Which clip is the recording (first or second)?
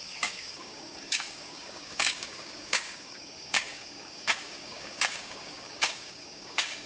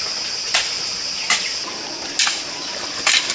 second